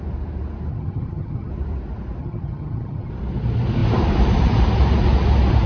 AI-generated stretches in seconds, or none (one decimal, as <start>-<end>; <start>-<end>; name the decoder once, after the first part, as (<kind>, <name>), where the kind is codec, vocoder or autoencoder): 0.7-1.5 (vocoder, HiFi-GAN); 2.2-3.1